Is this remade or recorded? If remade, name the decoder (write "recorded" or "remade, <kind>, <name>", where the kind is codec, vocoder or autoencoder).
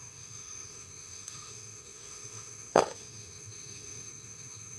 remade, autoencoder, DAC-VAE